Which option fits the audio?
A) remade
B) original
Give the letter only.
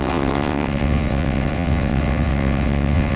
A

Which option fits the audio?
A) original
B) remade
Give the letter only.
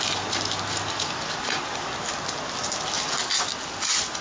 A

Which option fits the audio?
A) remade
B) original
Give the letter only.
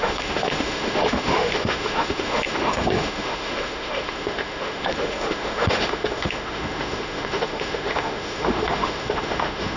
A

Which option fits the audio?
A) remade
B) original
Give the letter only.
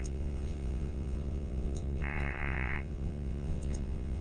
A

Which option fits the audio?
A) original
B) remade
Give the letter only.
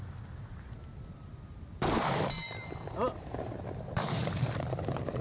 B